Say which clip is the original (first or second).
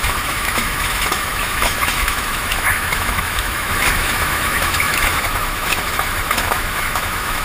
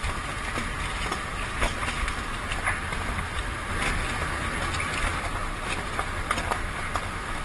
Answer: second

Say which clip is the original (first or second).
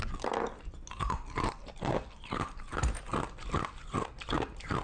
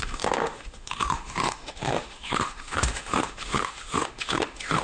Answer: first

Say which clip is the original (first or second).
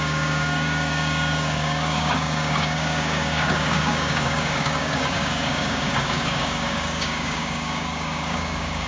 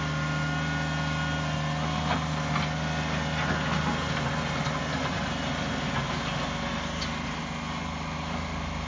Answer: second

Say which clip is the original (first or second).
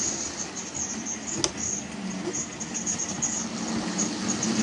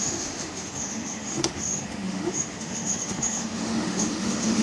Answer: first